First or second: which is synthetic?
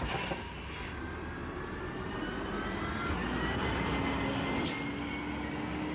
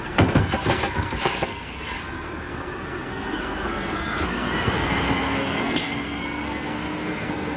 second